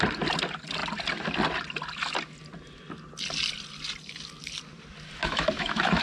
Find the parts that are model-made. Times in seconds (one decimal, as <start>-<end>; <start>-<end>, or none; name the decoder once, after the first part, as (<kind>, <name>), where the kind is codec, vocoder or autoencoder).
5.2-6.0 (autoencoder, DAC-VAE)